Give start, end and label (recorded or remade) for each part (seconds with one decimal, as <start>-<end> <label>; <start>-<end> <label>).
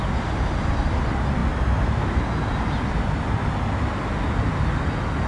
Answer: 0.0-5.3 recorded